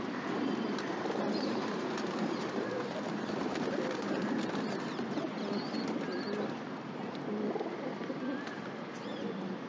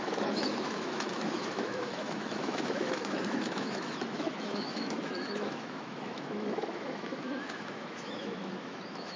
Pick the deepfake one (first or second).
second